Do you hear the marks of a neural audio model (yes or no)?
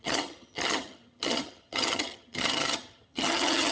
yes